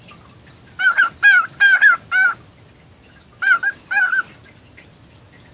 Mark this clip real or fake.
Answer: real